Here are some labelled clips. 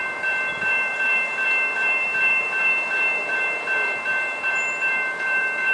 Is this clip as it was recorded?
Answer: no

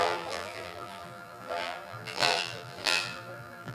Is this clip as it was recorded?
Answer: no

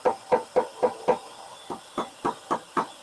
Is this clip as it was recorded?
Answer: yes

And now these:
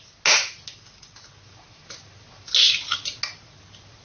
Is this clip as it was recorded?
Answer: yes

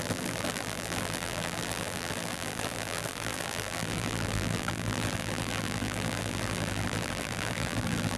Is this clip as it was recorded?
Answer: no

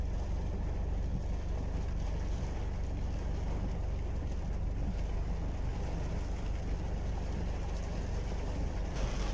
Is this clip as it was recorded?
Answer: yes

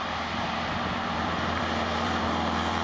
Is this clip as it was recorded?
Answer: no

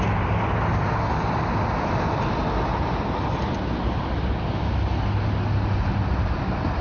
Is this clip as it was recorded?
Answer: yes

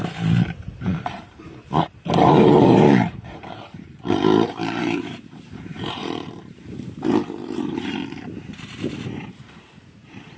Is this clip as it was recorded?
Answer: no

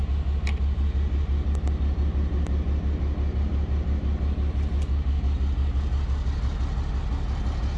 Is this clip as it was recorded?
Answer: yes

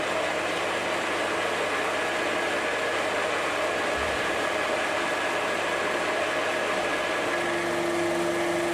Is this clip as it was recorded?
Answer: yes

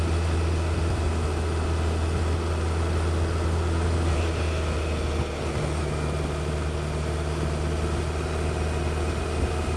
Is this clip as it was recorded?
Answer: yes